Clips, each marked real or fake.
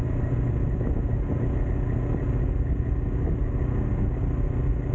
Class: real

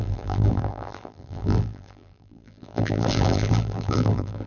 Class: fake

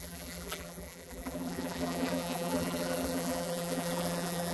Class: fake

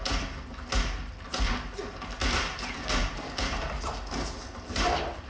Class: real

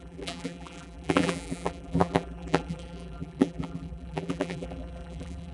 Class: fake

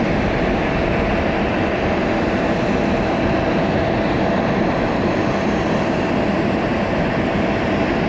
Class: fake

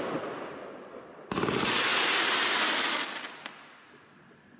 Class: real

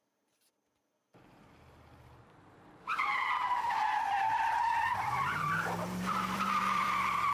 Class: fake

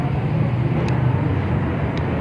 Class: real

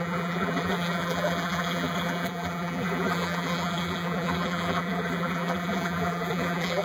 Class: fake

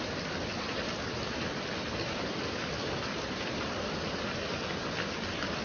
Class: fake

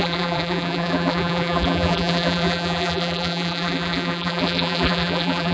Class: fake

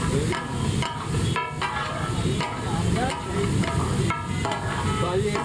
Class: real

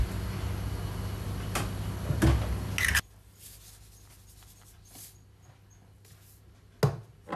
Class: real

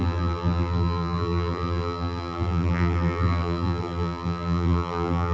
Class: fake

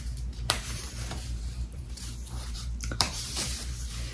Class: fake